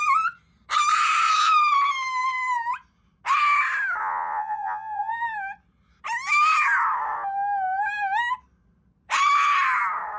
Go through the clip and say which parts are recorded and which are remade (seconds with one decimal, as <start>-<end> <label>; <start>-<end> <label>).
0.0-4.0 recorded; 4.0-5.1 remade; 5.1-10.2 recorded